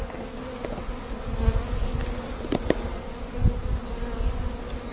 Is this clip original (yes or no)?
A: yes